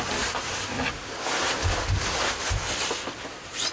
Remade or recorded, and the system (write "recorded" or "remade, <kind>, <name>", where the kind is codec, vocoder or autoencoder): recorded